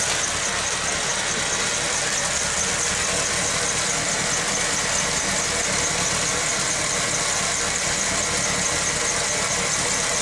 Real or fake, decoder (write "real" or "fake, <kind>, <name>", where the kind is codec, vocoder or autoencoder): real